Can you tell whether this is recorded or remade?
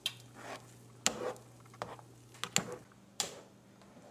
recorded